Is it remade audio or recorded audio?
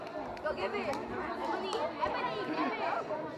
recorded